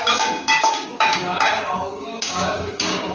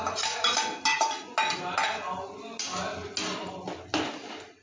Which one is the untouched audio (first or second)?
second